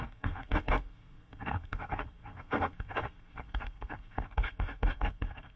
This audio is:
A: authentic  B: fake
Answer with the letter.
B